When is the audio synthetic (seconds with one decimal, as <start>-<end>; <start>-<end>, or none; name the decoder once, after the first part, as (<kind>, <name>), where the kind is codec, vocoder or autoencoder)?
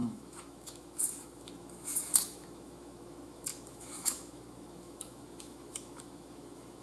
0.0-6.8 (autoencoder, DAC-VAE)